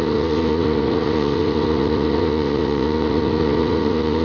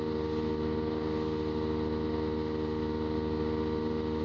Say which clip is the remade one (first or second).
first